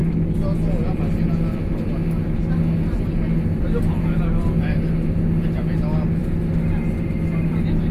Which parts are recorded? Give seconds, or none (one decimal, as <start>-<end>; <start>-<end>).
0.0-7.9